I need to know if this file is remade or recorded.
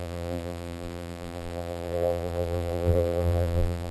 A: remade